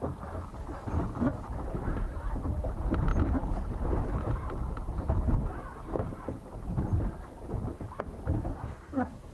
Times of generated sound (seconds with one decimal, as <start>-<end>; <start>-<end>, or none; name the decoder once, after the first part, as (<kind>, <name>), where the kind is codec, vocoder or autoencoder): 8.5-9.3 (codec, SNAC)